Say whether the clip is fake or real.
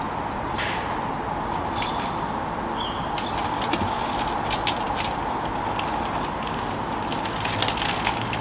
real